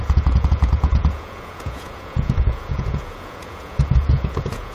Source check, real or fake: fake